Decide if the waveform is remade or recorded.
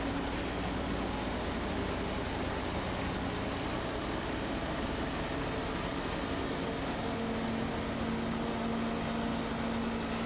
recorded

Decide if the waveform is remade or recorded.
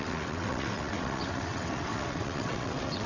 remade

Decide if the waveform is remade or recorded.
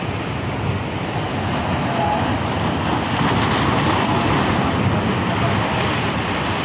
recorded